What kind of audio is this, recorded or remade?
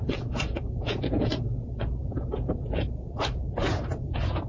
remade